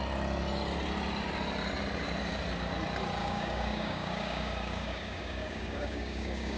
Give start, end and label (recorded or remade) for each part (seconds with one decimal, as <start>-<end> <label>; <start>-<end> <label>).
0.0-3.2 recorded; 3.2-6.6 remade